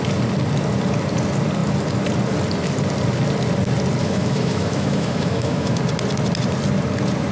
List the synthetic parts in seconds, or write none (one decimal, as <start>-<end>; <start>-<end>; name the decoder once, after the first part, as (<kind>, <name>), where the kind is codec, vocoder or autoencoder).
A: 4.0-5.8 (autoencoder, DAC-VAE)